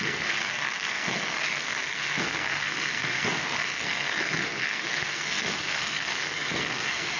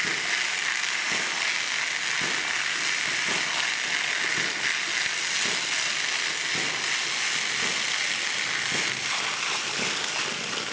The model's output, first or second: first